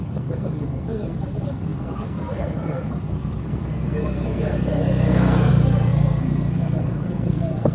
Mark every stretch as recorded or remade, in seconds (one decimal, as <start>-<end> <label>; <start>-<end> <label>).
0.0-7.7 remade